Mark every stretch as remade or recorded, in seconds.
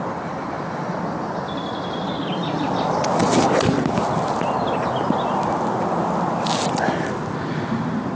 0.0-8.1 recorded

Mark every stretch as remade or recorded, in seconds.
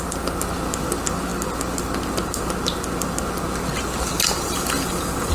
0.0-5.3 recorded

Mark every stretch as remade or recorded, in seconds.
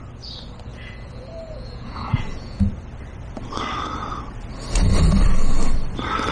0.0-0.7 recorded; 0.7-2.6 remade; 2.6-6.3 recorded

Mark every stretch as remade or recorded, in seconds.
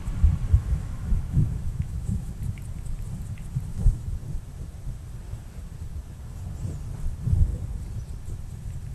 0.0-0.6 recorded; 0.6-2.3 remade; 2.3-3.7 recorded; 3.7-4.2 remade; 4.2-8.9 recorded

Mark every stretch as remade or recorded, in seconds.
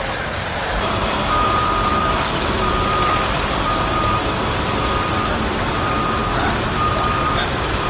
0.0-6.2 remade; 6.2-6.9 recorded; 6.9-7.9 remade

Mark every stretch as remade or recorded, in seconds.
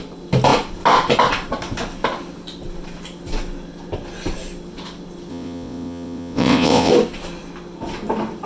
0.0-5.3 recorded; 5.3-6.9 remade; 6.9-8.5 recorded